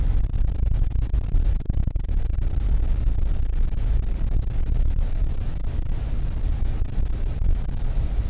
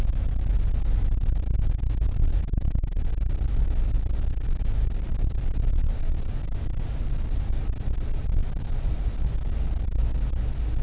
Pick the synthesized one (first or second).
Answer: first